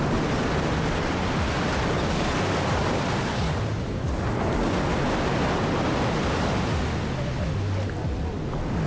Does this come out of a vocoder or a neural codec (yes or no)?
no